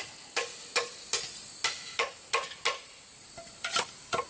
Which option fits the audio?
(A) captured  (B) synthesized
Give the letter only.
A